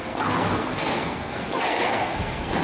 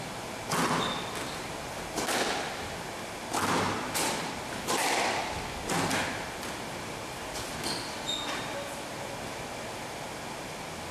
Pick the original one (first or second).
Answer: second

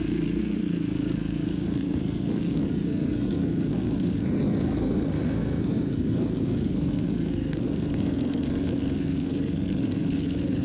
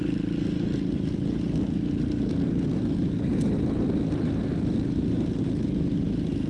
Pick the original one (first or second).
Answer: second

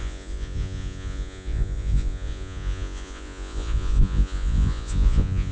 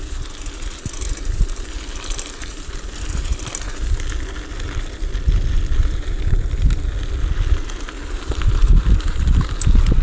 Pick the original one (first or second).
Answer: second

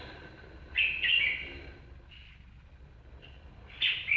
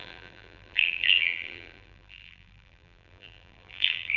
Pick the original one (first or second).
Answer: first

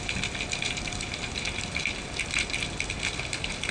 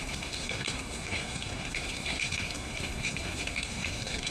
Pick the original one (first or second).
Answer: first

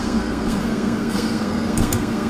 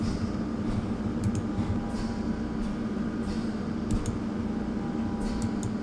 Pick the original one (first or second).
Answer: second